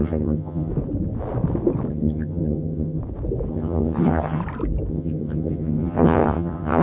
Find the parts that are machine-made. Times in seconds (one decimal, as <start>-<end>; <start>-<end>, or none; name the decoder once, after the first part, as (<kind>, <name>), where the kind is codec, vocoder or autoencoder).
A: 0.0-0.7 (vocoder, HiFi-GAN); 1.9-3.0; 3.5-4.4; 4.9-6.8